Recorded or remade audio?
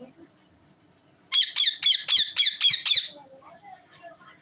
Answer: recorded